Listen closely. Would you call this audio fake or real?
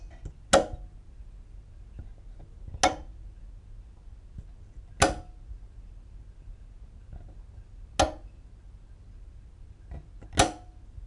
real